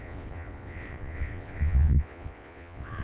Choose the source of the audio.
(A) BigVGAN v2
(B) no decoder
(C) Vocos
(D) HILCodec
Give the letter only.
C